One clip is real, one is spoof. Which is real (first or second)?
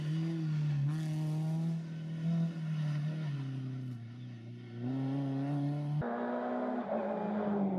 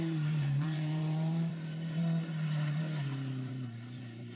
first